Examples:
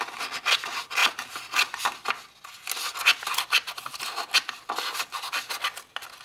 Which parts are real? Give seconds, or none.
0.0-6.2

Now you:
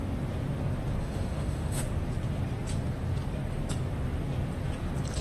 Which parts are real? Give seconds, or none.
0.0-1.0; 1.8-5.2

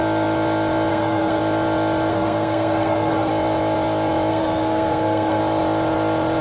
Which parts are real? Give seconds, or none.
0.0-0.9; 1.4-2.1; 3.3-4.3; 5.4-6.4

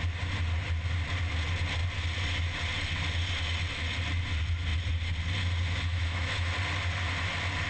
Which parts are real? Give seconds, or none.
0.0-5.9; 6.5-7.7

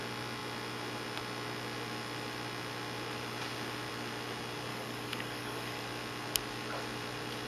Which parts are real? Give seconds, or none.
0.0-4.7; 5.8-7.5

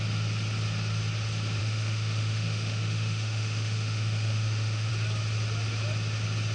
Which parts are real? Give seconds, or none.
0.0-1.6; 4.9-6.5

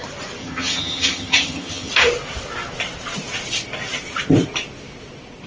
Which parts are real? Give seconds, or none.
0.0-0.4; 1.9-5.5